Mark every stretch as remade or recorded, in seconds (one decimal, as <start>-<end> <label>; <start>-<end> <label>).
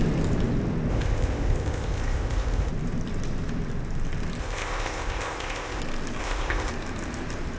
0.0-0.9 recorded; 0.9-2.7 remade; 2.7-4.4 recorded; 4.4-5.8 remade; 5.8-6.2 recorded; 6.2-6.7 remade; 6.7-7.6 recorded